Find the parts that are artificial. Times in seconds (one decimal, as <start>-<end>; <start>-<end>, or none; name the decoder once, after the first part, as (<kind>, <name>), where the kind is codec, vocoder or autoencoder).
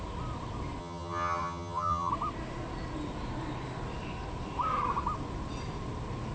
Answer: 0.8-2.1 (vocoder, HiFi-GAN)